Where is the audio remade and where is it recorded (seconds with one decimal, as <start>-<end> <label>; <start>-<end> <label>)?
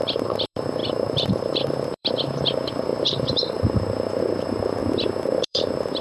0.0-4.8 remade; 4.8-5.4 recorded; 5.4-6.0 remade